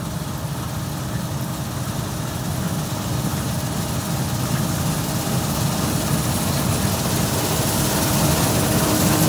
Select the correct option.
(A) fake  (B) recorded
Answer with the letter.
B